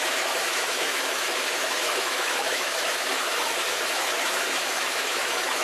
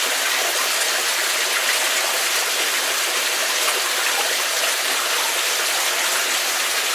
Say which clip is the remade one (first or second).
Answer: first